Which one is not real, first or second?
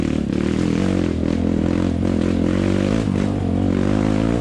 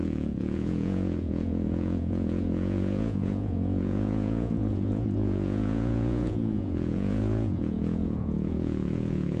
second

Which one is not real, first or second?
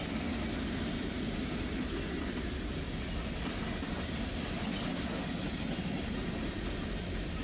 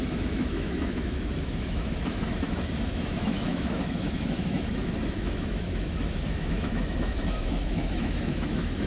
second